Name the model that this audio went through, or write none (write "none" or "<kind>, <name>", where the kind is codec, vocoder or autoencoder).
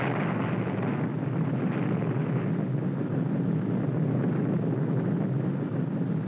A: none